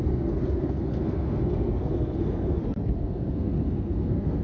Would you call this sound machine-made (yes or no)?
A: yes